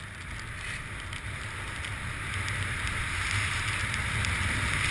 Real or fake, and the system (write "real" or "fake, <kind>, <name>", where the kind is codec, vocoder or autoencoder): real